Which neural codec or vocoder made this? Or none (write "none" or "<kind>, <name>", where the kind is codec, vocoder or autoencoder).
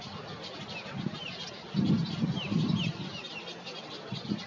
none